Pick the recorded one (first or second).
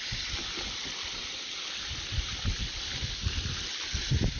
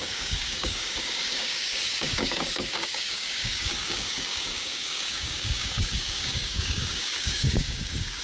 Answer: first